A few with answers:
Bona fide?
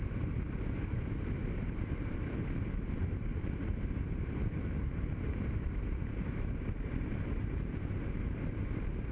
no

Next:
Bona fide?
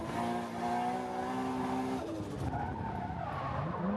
yes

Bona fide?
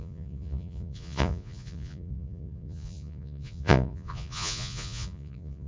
no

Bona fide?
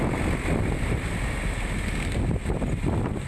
yes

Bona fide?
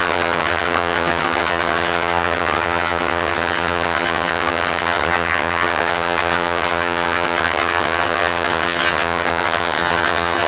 no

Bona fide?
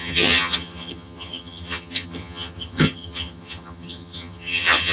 no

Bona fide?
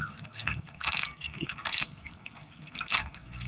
no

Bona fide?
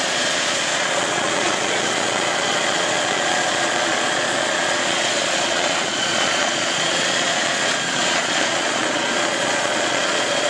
no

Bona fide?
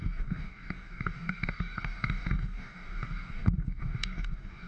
no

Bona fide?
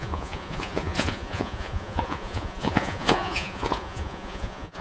no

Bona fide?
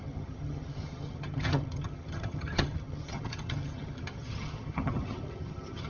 no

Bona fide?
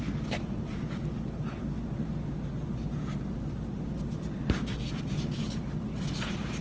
yes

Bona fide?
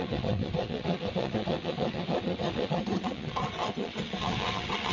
no